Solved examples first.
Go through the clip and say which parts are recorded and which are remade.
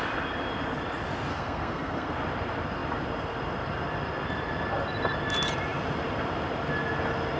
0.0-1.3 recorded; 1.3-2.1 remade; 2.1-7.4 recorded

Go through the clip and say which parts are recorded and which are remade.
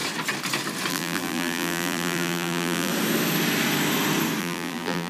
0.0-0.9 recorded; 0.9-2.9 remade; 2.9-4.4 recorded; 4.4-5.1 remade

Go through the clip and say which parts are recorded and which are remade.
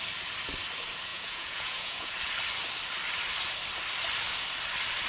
0.0-1.1 recorded; 1.1-2.1 remade; 2.1-5.1 recorded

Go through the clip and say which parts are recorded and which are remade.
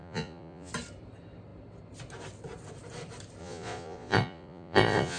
0.0-0.7 remade; 0.7-3.4 recorded; 3.4-5.2 remade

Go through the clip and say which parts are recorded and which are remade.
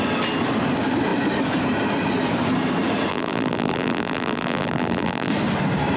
0.0-3.1 recorded; 3.1-5.3 remade; 5.3-6.0 recorded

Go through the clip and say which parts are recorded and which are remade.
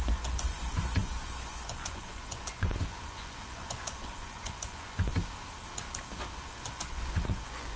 0.0-5.1 remade; 5.1-6.4 recorded; 6.4-7.8 remade